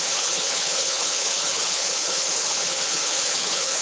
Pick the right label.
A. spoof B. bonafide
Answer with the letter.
A